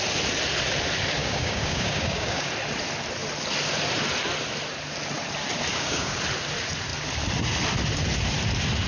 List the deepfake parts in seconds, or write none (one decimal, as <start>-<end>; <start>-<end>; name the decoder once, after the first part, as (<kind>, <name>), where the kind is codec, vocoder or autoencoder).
1.2-2.5 (codec, DAC); 5.7-6.2